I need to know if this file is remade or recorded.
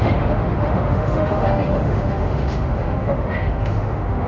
remade